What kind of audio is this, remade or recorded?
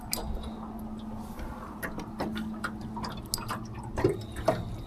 recorded